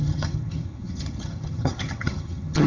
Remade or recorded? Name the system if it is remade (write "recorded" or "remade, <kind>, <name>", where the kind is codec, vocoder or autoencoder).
remade, vocoder, HiFi-GAN